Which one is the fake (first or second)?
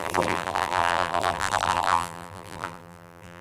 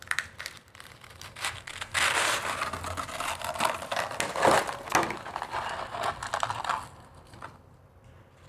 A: first